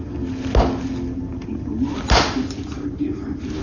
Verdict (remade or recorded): recorded